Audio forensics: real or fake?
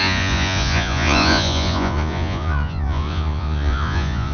fake